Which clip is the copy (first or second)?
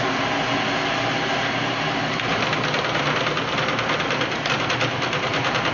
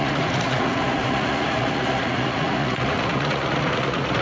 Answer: second